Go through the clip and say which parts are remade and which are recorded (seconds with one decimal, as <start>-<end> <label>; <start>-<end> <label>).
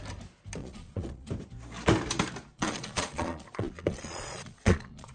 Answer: 0.0-0.6 recorded; 0.6-1.3 remade; 1.3-2.5 recorded; 2.5-5.1 remade